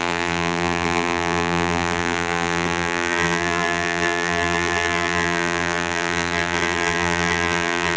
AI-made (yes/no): yes